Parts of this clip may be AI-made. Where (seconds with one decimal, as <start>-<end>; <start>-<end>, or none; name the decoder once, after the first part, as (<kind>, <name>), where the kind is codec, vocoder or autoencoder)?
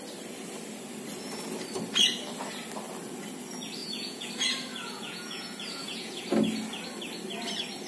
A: 3.8-4.3 (vocoder, Vocos); 4.7-6.2